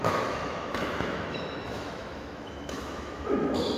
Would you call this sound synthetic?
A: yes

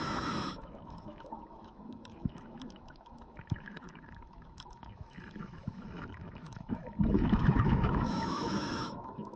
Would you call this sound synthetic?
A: yes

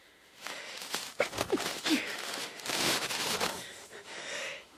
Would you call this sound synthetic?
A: yes